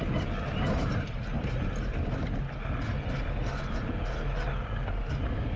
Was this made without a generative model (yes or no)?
yes